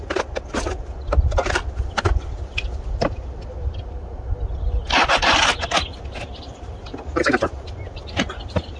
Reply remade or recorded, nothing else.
recorded